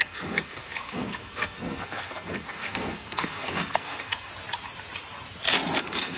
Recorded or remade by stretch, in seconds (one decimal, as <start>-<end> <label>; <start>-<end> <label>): 0.0-4.3 remade; 4.3-5.8 recorded; 5.8-6.2 remade